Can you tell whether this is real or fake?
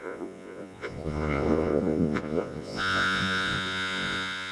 fake